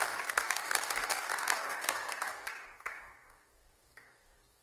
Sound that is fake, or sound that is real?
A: fake